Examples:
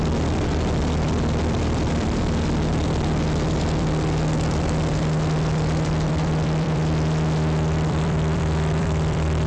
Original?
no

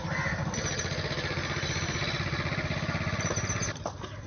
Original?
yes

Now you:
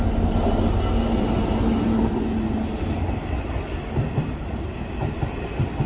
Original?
yes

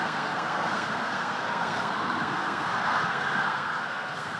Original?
no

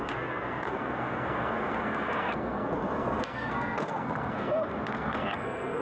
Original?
no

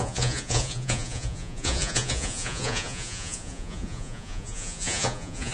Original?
no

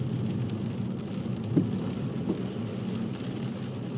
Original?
yes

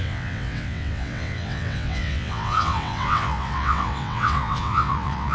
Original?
no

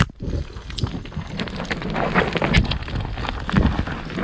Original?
yes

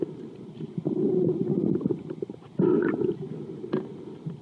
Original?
no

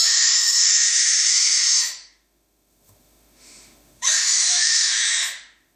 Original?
no